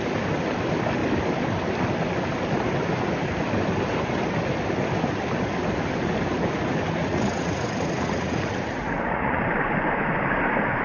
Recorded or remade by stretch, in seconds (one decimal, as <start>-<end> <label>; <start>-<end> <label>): 0.0-7.0 recorded; 7.0-9.4 remade; 9.4-10.8 recorded

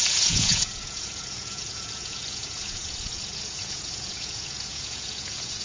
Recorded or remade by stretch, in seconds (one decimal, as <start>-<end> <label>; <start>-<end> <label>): 0.0-5.6 remade

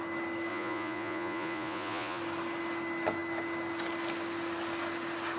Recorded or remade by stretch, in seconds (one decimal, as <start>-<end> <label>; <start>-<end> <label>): 0.0-0.5 recorded; 0.5-2.2 remade; 2.2-5.4 recorded

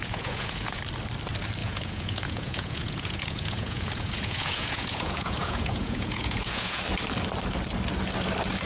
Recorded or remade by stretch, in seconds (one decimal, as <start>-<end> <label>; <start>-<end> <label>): 0.0-0.8 remade; 0.8-1.6 recorded; 1.6-6.8 remade; 6.8-8.7 recorded

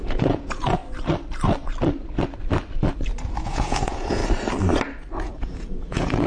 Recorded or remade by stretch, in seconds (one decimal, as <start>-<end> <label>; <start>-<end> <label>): 0.0-0.8 remade; 0.8-3.4 recorded; 3.4-4.2 remade; 4.2-5.2 recorded; 5.2-6.3 remade

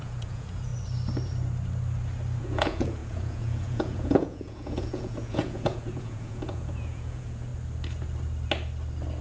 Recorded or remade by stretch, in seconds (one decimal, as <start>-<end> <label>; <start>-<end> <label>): 0.0-0.7 remade; 0.7-2.4 recorded; 2.4-7.5 remade; 7.5-9.2 recorded

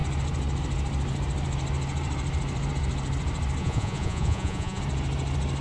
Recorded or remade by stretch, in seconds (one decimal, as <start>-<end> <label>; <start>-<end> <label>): 0.0-3.6 recorded; 3.6-4.8 remade; 4.8-5.6 recorded

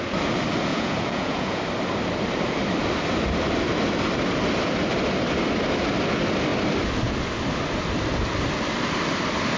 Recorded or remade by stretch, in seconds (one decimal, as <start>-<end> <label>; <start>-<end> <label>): 0.0-0.7 recorded; 0.7-1.6 remade; 1.6-9.6 recorded